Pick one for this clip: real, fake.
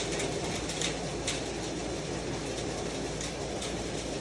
real